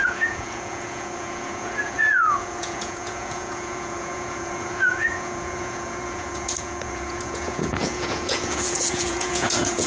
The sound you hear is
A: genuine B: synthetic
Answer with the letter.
B